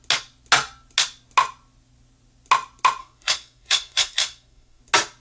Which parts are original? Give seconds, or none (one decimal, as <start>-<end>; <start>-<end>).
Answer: 0.0-3.0; 4.8-5.2